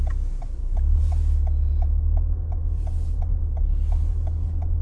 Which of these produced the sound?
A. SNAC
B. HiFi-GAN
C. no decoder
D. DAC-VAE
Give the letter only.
C